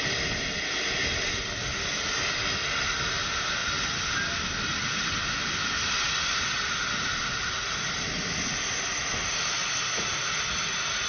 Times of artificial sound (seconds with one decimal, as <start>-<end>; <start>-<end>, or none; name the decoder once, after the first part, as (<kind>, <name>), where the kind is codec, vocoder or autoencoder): none